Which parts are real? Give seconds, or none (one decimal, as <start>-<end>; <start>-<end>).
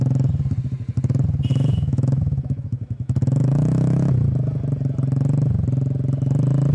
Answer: 0.0-1.5; 4.1-6.7